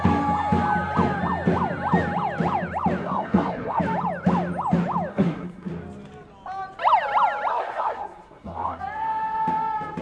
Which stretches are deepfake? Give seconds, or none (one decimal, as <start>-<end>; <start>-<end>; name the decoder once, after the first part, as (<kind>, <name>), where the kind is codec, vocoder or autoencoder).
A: 3.0-3.8 (codec, SNAC); 5.1-5.7; 7.5-8.8